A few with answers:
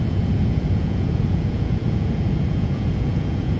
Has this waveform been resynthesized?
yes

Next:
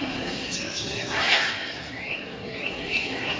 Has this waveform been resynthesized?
yes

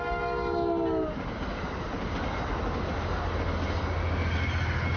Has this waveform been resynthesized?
no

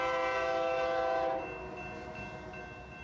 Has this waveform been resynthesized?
no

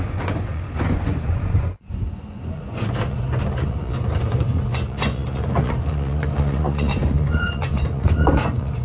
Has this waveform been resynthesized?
yes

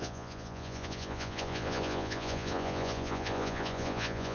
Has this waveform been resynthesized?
yes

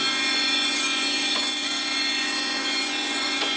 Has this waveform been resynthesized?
yes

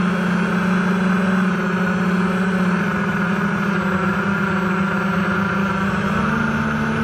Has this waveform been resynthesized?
no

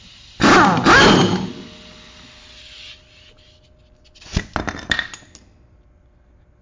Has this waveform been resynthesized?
no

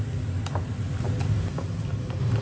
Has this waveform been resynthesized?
no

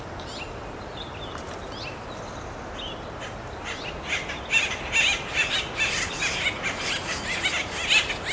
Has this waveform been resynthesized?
no